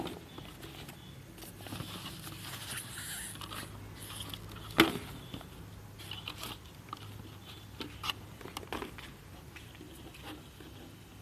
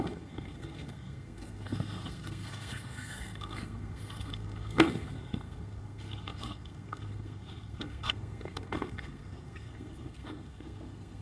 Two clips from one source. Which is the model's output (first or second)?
second